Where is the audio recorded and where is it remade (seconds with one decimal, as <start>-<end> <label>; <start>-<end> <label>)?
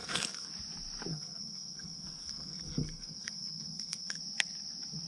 0.0-0.5 remade; 0.5-1.1 recorded; 1.1-4.2 remade; 4.2-5.1 recorded